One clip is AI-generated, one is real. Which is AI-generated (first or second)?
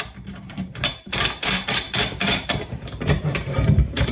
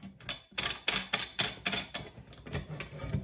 first